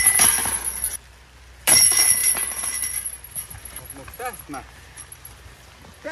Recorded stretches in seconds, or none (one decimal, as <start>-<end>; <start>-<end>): 0.0-6.1